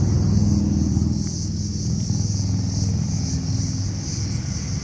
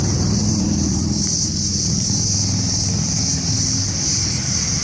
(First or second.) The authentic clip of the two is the first